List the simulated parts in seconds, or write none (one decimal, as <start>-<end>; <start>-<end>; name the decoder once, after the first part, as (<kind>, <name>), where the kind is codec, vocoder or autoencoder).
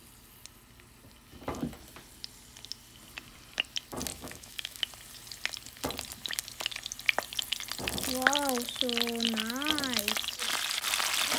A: 4.1-4.8 (autoencoder, DAC-VAE)